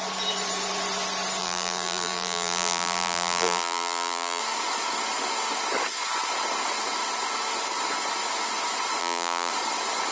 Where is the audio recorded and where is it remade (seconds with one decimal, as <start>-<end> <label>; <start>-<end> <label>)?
0.0-1.4 recorded; 1.4-4.4 remade; 4.4-9.0 recorded; 9.0-9.5 remade; 9.5-10.1 recorded